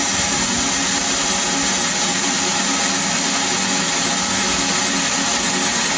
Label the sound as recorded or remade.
recorded